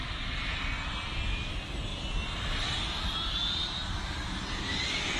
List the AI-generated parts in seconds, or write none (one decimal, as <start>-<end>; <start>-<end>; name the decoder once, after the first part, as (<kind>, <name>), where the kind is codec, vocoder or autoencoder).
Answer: none